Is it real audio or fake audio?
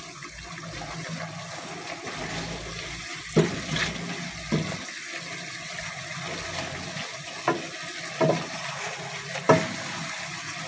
real